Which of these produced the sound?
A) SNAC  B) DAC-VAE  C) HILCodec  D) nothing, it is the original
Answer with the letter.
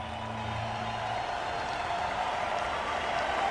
D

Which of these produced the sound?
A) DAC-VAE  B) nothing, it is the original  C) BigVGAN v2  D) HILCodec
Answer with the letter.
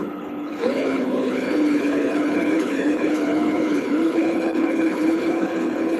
D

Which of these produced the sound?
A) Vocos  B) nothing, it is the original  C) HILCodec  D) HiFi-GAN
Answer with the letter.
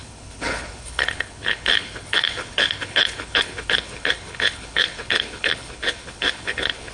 C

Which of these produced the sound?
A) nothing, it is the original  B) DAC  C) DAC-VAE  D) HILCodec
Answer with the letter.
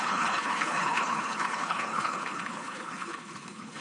D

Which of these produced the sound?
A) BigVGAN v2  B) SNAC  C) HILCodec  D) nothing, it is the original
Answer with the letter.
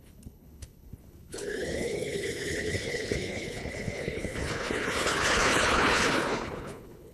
C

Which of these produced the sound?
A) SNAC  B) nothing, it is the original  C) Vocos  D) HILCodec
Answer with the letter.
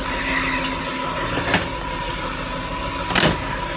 B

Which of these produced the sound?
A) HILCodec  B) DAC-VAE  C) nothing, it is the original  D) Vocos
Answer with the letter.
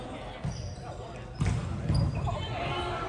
C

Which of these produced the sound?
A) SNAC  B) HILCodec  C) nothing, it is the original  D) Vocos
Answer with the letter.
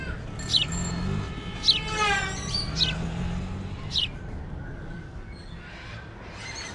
C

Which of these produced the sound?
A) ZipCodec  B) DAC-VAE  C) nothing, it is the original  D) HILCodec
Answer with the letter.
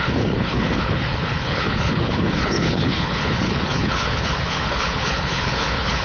D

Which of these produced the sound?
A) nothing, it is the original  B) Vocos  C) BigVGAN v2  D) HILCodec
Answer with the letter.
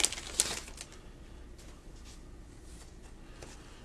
A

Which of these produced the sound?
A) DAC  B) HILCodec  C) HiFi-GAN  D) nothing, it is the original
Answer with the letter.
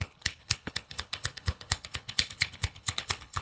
B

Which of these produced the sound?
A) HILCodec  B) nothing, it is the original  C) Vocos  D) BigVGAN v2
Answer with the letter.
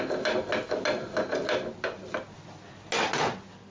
B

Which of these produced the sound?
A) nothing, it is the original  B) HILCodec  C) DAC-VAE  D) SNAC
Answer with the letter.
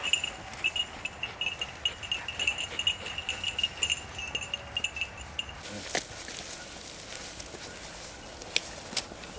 A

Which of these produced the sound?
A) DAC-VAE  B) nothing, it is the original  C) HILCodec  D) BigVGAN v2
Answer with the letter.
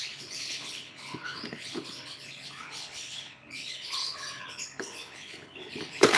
C